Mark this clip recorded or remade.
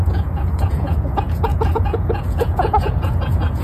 remade